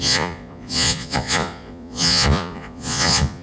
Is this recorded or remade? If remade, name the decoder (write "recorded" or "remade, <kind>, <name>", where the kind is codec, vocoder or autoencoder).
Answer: remade, vocoder, Vocos